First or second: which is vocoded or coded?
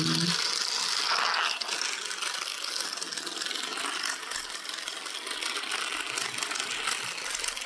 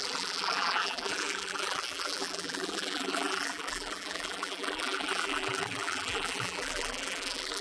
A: second